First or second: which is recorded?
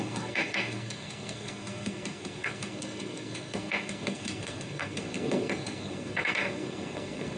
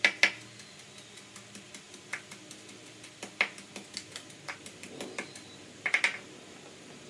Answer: second